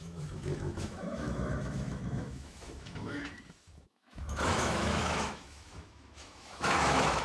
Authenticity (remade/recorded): remade